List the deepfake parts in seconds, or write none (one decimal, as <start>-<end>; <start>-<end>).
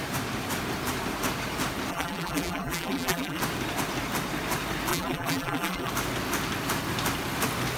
1.9-3.4; 4.9-5.9